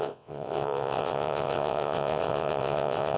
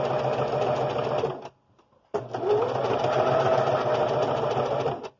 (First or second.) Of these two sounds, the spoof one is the first